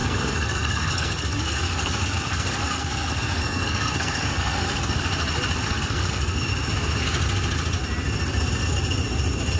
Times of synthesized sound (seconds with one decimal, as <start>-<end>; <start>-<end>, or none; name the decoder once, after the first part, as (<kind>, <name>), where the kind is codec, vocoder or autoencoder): 0.0-5.0 (codec, SNAC); 5.7-6.4